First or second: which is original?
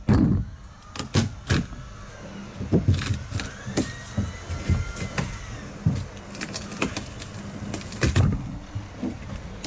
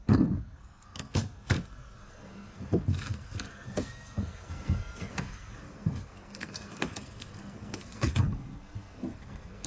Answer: first